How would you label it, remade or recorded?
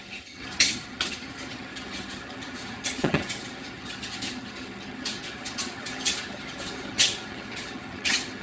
remade